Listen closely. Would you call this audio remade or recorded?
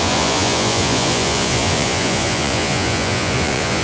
remade